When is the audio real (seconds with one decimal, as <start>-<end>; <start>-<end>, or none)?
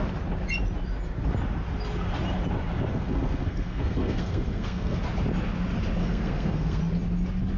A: 0.0-2.9; 5.0-6.0; 6.8-7.6